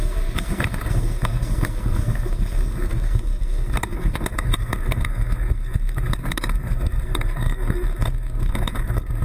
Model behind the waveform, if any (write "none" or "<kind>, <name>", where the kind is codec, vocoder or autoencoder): codec, SNAC